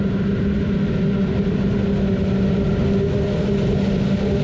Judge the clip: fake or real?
real